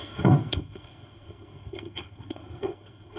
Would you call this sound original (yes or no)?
no